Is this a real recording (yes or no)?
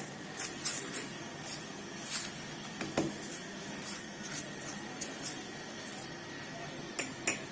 yes